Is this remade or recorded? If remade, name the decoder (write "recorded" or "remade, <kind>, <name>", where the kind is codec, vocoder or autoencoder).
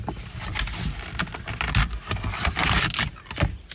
recorded